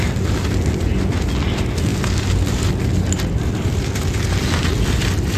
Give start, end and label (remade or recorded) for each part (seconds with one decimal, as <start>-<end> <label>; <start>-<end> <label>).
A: 0.0-5.4 recorded